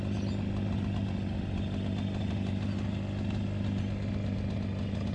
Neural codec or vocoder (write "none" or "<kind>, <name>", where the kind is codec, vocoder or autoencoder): none